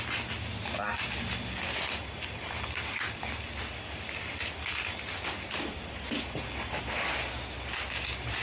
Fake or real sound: real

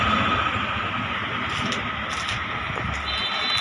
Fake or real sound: real